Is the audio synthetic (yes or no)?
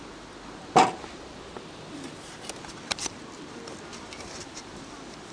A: no